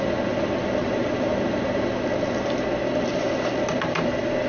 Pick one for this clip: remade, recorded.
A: recorded